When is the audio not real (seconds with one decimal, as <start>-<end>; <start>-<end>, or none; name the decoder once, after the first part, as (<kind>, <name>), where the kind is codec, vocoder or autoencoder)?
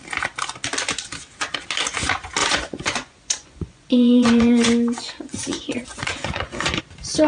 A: 2.4-6.8 (vocoder, Vocos)